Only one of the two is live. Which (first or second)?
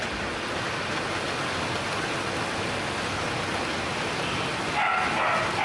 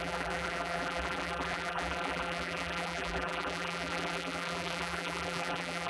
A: first